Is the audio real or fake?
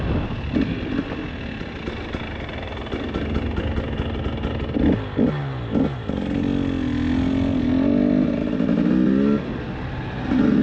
real